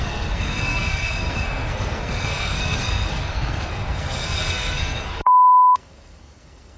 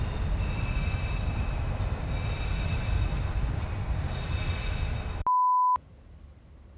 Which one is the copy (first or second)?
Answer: first